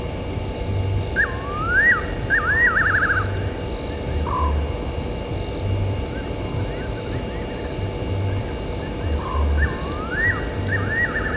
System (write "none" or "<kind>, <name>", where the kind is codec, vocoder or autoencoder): none